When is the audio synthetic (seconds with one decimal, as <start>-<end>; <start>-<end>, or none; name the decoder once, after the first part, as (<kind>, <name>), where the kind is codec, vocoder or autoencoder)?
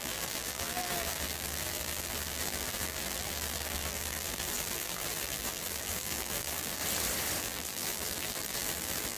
0.0-6.8 (vocoder, BigVGAN v2); 7.4-9.2